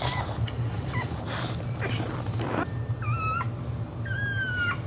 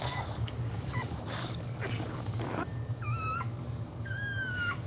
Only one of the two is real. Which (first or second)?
first